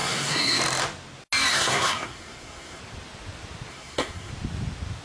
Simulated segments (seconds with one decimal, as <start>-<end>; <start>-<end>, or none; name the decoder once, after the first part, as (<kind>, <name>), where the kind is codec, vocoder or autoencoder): 0.0-0.6 (codec, SNAC); 1.5-2.8; 3.7-4.3